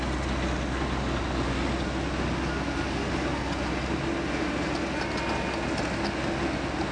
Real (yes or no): yes